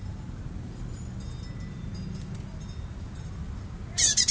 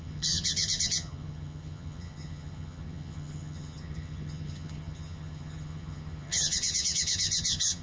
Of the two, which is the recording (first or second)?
first